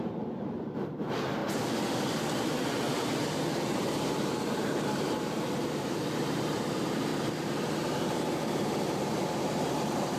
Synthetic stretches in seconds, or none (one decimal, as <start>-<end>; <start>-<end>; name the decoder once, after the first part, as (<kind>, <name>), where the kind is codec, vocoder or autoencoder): 0.0-1.4 (vocoder, BigVGAN v2); 3.7-10.2